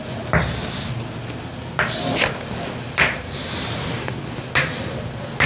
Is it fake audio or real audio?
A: real